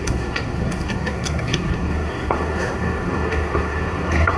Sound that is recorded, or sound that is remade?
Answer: remade